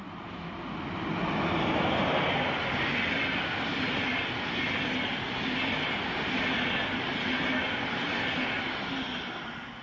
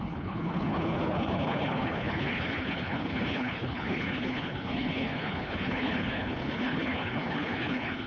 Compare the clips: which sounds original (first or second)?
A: first